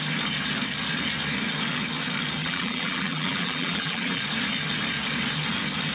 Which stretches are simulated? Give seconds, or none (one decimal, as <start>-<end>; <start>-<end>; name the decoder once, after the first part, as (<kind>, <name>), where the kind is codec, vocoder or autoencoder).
2.4-4.2 (vocoder, BigVGAN v2)